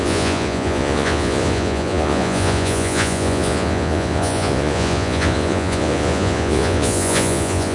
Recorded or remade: remade